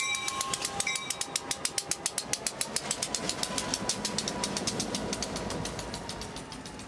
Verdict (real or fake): real